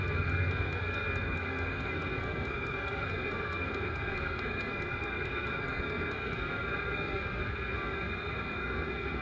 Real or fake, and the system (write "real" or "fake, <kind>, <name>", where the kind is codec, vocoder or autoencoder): fake, codec, SNAC